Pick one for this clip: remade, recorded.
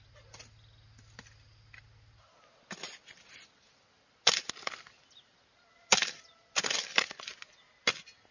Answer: recorded